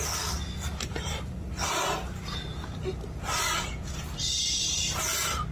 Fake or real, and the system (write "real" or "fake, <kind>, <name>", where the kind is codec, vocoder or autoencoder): real